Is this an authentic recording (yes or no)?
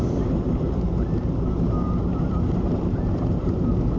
no